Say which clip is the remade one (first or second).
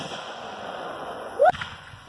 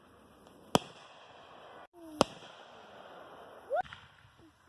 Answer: first